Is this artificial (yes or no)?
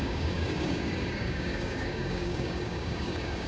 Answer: yes